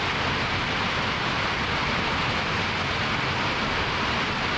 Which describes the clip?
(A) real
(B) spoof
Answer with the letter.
A